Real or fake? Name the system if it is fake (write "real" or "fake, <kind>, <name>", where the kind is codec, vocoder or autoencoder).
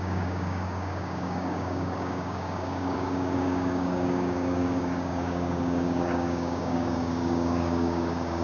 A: fake, codec, DAC